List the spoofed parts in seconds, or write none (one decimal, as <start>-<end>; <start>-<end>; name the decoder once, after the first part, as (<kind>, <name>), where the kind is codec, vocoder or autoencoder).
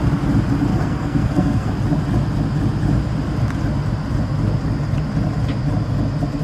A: 0.7-1.7 (codec, SNAC)